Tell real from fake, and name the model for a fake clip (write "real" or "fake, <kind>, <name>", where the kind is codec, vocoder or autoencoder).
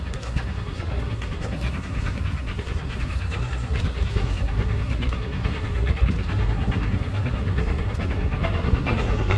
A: fake, codec, SNAC